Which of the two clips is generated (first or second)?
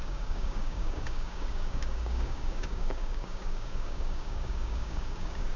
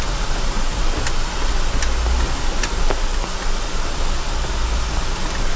first